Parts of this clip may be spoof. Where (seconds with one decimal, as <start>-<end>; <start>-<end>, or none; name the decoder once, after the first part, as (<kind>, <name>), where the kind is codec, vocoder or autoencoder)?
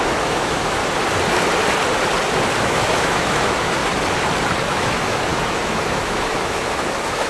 0.0-0.8 (autoencoder, DAC-VAE); 2.6-3.8; 4.6-7.3